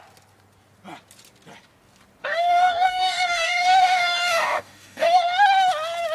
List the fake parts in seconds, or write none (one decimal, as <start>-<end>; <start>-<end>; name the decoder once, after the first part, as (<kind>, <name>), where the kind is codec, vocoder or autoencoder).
2.2-5.2 (codec, DAC)